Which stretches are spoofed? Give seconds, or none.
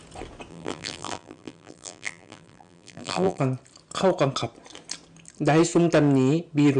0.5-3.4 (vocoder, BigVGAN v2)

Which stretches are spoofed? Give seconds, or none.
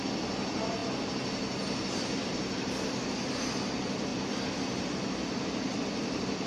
4.1-6.5 (vocoder, BigVGAN v2)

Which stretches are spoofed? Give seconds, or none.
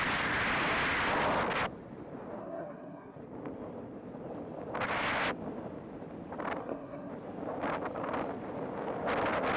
2.4-3.2 (codec, SNAC); 6.6-7.1